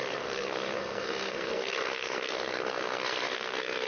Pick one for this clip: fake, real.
fake